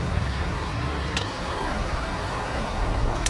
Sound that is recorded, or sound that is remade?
remade